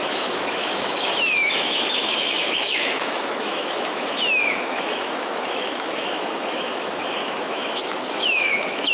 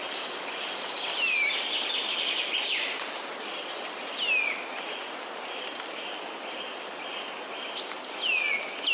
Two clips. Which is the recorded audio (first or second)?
second